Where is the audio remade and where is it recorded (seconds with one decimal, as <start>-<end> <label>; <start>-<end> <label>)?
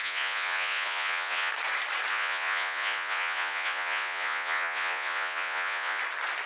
0.0-1.5 remade; 1.5-2.1 recorded; 2.1-6.0 remade; 6.0-6.5 recorded